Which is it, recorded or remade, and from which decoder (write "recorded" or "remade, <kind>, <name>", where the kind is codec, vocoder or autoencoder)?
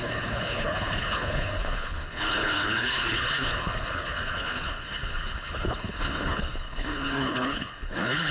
remade, codec, HILCodec